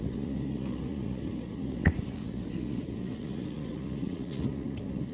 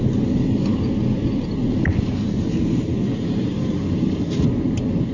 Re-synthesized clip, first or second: first